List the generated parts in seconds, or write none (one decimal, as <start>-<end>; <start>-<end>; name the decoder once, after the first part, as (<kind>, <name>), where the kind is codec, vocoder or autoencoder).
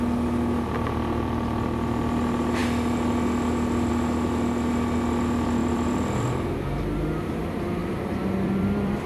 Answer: 5.6-6.6 (vocoder, BigVGAN v2); 7.8-9.1